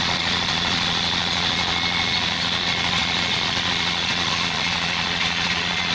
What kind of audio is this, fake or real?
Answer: fake